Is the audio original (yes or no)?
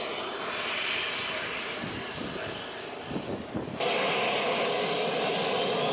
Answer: yes